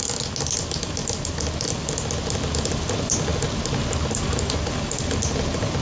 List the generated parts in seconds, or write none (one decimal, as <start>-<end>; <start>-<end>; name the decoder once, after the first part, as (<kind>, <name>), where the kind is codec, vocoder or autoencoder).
none

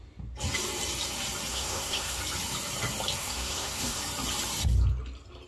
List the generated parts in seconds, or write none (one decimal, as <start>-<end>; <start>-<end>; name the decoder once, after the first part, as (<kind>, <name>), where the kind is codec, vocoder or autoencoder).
1.5-2.2 (codec, SNAC); 3.2-4.0

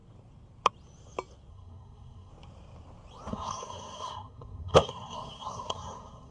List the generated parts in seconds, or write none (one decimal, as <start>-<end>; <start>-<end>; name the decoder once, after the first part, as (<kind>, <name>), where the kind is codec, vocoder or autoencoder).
1.5-2.3 (codec, SNAC); 3.3-6.3